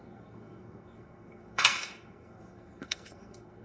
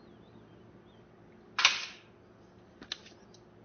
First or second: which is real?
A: second